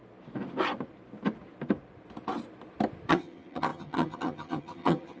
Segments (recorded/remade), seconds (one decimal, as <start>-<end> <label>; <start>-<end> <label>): 0.0-3.1 recorded; 3.1-5.2 remade